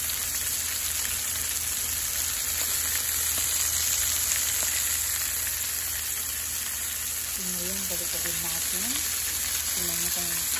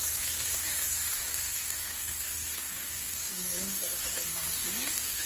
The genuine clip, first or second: first